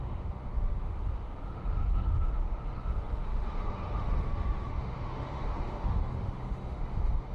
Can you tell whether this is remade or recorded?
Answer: remade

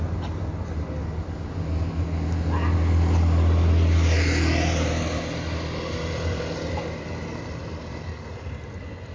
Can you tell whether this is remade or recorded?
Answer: recorded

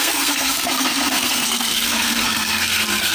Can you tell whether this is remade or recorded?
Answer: remade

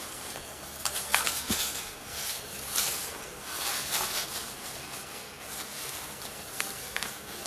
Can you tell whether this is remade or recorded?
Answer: remade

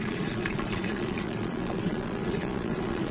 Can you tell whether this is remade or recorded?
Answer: remade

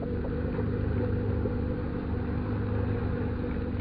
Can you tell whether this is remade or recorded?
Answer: recorded